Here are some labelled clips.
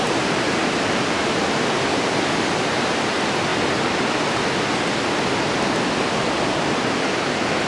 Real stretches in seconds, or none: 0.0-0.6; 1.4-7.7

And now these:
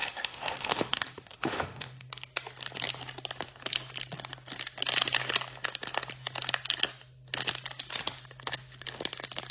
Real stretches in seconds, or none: 2.1-9.5

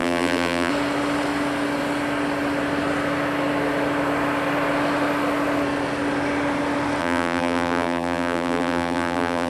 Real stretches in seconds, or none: 0.7-7.0